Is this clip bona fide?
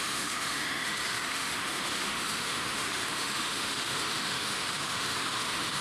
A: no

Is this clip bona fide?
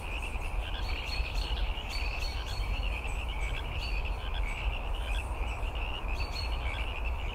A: no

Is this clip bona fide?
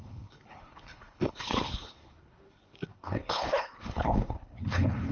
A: no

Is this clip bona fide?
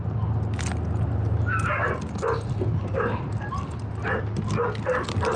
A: yes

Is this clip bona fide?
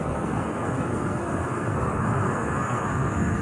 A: no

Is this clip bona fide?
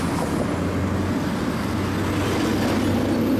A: yes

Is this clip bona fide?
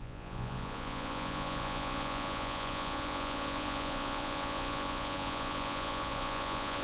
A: no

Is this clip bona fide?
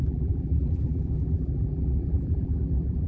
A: no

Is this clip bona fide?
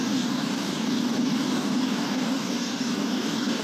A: no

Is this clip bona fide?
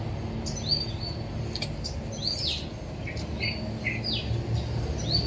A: yes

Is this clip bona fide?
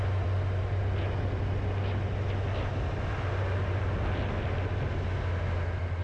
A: yes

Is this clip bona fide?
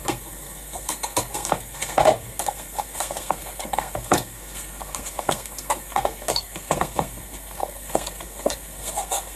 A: no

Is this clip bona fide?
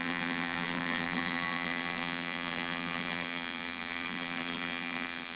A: no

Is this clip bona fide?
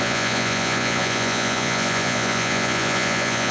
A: no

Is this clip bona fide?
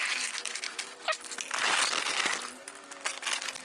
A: yes